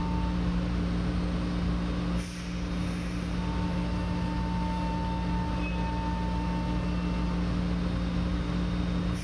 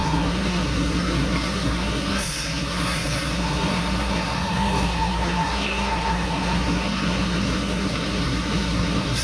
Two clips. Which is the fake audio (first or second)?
second